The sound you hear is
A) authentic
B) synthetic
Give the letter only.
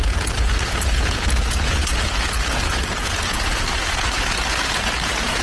B